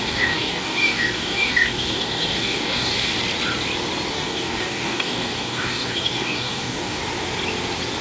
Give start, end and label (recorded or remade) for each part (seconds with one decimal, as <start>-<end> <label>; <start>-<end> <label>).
0.0-3.1 remade; 3.1-4.1 recorded; 4.1-7.0 remade; 7.0-8.0 recorded